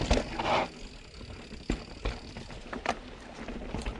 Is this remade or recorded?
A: recorded